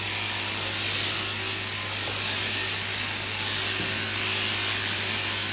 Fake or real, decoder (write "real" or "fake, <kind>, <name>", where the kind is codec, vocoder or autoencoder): real